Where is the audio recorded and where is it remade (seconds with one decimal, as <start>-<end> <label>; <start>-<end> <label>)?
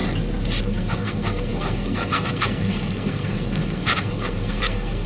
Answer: 0.0-0.6 recorded; 0.6-5.1 remade